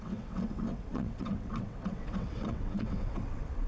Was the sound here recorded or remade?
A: remade